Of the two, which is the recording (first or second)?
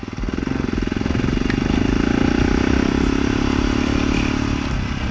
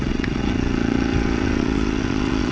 first